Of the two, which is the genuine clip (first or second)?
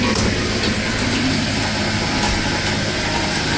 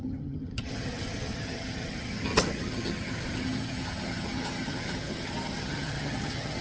first